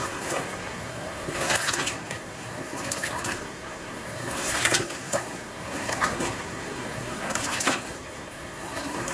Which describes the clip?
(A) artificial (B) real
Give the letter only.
A